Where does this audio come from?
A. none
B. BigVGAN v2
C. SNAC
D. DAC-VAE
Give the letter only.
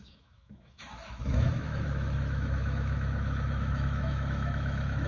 D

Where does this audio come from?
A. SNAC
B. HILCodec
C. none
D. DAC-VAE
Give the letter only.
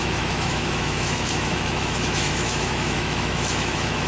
D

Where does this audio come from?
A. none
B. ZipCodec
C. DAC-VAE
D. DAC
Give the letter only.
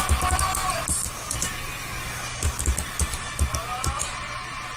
A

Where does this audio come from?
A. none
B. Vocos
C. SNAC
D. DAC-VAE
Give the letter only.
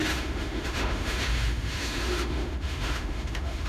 D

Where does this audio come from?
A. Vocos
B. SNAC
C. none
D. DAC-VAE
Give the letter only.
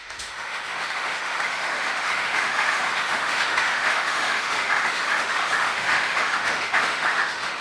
D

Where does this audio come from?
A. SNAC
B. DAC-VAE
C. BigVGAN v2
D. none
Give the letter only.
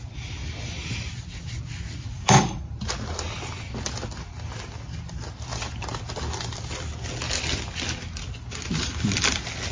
D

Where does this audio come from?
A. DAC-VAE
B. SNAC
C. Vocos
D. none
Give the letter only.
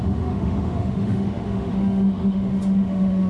A